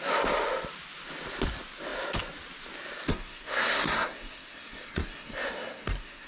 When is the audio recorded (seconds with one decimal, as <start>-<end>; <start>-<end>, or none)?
0.0-3.1